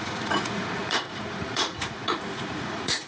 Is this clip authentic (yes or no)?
no